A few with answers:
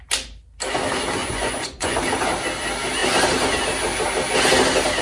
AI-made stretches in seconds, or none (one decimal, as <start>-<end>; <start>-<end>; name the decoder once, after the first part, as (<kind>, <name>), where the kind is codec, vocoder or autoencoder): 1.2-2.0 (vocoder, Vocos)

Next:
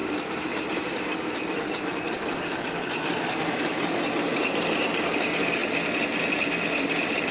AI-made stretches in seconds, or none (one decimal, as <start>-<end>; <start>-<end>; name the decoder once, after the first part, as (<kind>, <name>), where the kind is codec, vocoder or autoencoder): 0.0-5.6 (vocoder, BigVGAN v2); 6.8-7.3

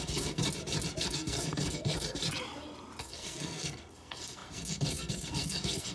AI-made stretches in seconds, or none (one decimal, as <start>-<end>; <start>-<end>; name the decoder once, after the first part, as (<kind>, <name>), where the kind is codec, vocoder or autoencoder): 0.0-0.4 (codec, SNAC); 1.0-2.2; 3.0-5.9

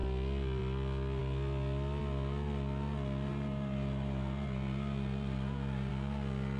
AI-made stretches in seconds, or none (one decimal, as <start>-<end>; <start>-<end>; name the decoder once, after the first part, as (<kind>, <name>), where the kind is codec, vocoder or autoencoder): 3.3-5.9 (vocoder, BigVGAN v2)

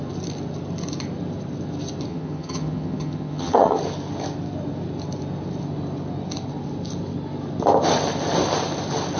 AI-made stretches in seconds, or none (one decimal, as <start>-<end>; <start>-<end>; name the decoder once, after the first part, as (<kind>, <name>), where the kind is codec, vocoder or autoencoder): 2.1-3.8 (vocoder, HiFi-GAN)

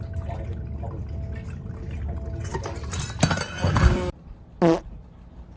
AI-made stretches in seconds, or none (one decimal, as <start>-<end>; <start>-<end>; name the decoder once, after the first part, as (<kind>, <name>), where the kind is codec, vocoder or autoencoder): none